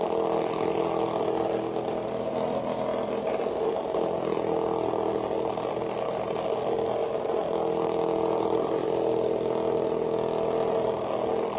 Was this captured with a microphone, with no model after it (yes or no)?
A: yes